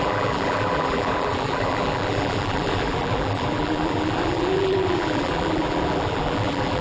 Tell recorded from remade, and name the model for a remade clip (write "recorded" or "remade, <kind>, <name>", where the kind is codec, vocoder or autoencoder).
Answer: remade, vocoder, BigVGAN v2